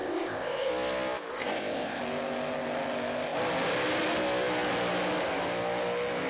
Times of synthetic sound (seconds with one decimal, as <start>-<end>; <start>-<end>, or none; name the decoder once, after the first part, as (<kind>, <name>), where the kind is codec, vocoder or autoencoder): 0.0-0.7 (codec, ZipCodec); 1.3-2.0